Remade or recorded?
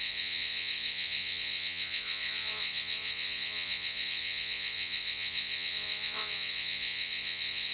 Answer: remade